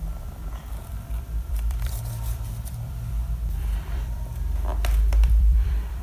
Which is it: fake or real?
fake